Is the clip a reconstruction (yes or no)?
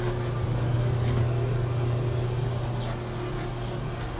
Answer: no